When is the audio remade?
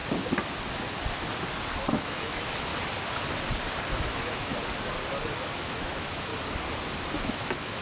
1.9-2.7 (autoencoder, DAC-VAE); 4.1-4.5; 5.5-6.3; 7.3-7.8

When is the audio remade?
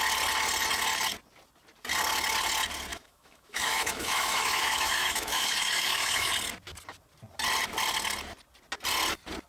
2.9-6.3 (autoencoder, DAC-VAE)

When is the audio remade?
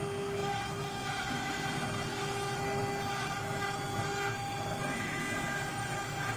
0.4-1.5 (autoencoder, DAC-VAE); 2.1-2.8; 4.0-5.2; 5.7-6.4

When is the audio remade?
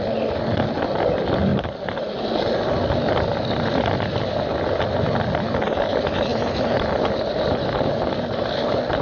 none